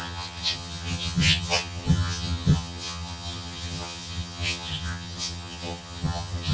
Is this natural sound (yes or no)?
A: no